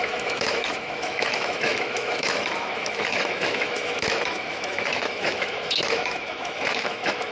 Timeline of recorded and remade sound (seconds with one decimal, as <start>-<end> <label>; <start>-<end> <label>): 0.0-7.3 remade